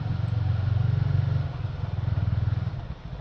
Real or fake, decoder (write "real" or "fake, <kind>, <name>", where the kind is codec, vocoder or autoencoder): real